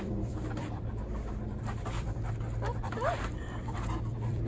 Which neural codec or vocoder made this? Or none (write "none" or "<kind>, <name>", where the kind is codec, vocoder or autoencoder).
vocoder, BigVGAN v2